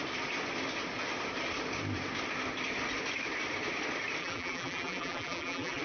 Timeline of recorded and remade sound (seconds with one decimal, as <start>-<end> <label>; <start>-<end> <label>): 0.0-4.2 recorded; 4.2-5.8 remade